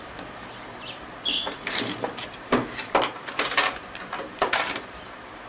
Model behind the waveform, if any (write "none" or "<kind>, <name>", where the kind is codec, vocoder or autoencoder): vocoder, BigVGAN v2